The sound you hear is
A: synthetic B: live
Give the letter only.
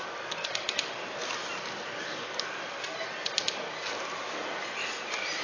B